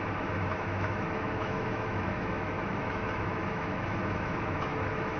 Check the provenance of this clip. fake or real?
fake